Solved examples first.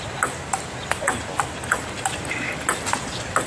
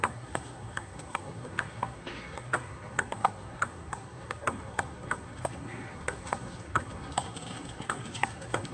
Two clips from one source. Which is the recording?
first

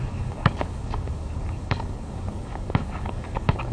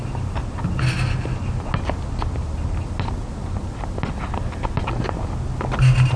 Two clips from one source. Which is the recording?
second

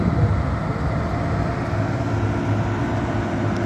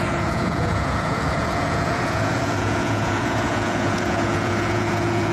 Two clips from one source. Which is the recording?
first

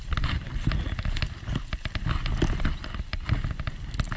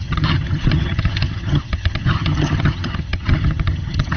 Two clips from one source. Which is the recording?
first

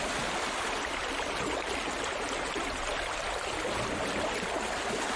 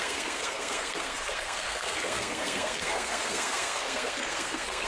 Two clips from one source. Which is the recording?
first